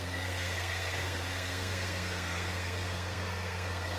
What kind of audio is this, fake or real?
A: fake